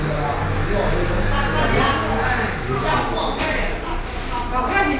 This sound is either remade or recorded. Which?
recorded